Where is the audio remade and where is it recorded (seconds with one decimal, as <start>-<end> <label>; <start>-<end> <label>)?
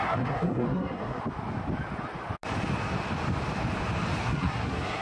0.0-1.2 remade; 1.2-4.2 recorded; 4.2-5.0 remade